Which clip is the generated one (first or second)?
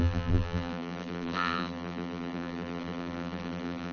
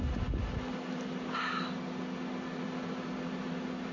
first